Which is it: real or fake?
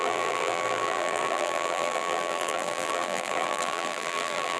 fake